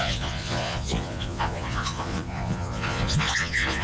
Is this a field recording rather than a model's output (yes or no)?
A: no